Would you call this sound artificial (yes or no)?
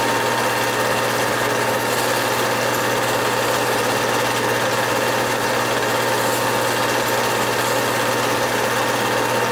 no